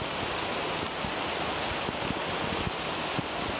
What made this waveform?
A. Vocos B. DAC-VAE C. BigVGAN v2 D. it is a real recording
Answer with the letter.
D